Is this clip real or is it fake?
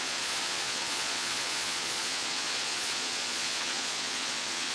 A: fake